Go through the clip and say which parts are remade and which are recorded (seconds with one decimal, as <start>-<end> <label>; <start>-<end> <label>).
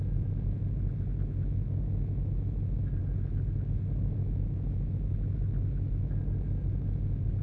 0.0-7.4 recorded